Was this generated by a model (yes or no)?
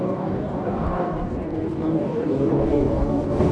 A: yes